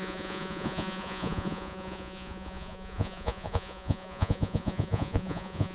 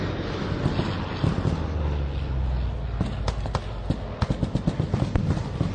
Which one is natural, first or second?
second